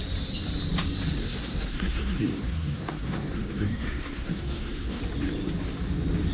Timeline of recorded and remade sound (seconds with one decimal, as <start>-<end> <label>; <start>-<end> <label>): 0.0-1.2 recorded; 1.2-5.0 remade; 5.0-6.3 recorded